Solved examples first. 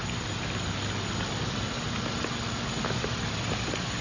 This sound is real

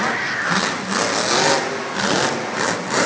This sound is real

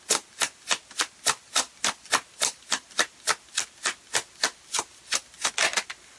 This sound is real